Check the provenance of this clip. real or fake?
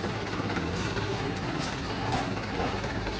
fake